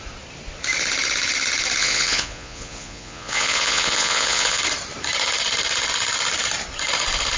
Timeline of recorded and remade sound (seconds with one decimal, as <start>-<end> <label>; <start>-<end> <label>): 0.0-1.8 recorded; 1.8-4.6 remade; 4.6-7.4 recorded